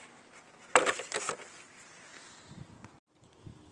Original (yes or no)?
yes